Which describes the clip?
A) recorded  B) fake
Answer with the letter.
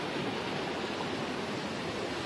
A